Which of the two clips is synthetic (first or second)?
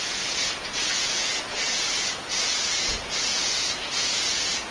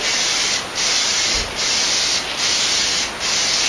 first